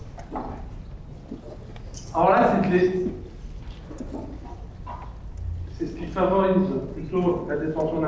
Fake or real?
real